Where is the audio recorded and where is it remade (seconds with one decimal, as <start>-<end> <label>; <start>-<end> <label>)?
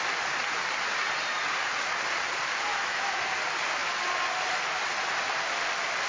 0.0-2.7 recorded; 2.7-3.3 remade; 3.3-6.1 recorded